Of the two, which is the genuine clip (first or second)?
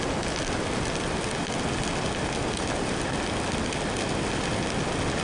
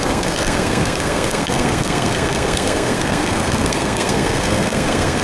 first